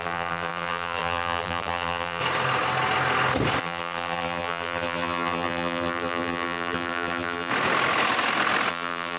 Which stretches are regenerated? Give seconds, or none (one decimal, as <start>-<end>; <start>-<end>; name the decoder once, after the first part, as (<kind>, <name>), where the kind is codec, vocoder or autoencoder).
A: 0.0-2.2 (vocoder, BigVGAN v2); 3.6-7.5; 8.7-9.2

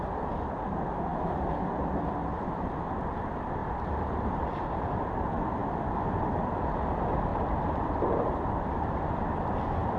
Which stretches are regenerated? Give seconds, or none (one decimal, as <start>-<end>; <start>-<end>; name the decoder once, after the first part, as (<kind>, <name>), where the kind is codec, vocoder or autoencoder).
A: 3.6-4.8 (vocoder, BigVGAN v2); 7.3-8.3

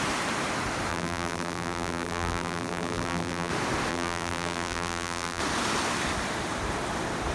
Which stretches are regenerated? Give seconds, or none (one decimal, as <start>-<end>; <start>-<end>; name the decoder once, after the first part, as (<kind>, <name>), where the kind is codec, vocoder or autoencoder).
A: 0.9-3.5 (vocoder, BigVGAN v2); 3.9-5.4

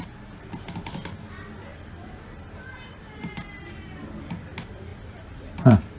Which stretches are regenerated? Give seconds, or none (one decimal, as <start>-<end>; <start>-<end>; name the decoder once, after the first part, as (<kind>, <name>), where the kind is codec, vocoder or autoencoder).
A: 1.7-3.7 (vocoder, BigVGAN v2); 4.9-6.0